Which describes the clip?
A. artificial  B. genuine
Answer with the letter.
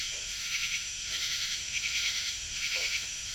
A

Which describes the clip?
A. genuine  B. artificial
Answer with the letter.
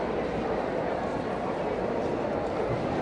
B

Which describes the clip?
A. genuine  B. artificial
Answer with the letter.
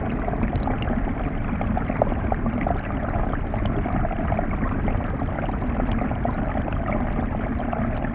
A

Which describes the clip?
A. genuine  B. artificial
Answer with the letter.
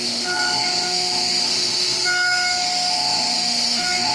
B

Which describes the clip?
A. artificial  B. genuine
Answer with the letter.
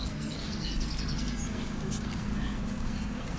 A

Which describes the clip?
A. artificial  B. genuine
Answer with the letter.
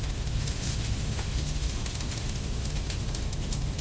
A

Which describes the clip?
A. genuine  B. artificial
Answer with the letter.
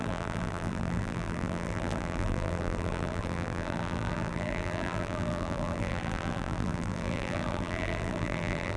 B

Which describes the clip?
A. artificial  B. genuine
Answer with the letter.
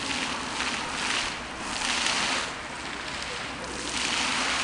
B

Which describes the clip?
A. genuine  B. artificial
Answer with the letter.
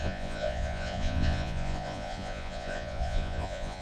B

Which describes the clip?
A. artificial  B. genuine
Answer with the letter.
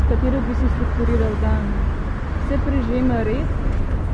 B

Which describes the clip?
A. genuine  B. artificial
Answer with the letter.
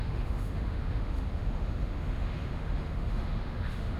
B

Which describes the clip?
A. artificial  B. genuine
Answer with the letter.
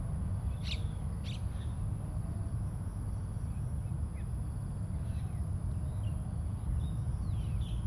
B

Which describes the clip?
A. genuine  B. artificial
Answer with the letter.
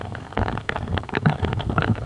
B